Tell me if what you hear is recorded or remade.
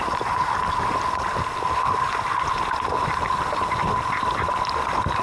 recorded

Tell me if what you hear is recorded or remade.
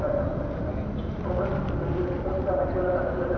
recorded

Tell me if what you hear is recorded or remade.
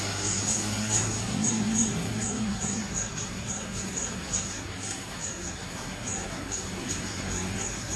remade